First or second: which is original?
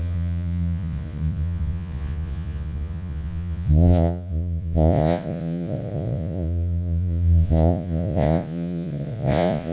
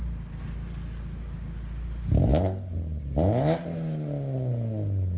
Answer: second